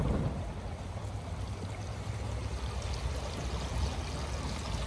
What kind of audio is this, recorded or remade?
recorded